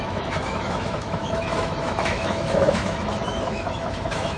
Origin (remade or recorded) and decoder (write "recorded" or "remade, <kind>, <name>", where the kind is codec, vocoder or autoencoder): remade, autoencoder, DAC-VAE